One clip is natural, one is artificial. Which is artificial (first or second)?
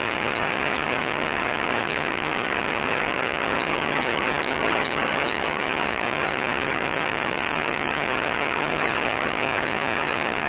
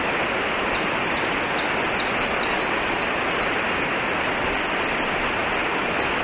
first